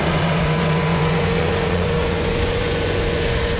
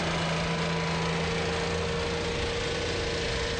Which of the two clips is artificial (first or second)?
first